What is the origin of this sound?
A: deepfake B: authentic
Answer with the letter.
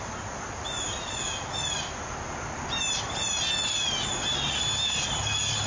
B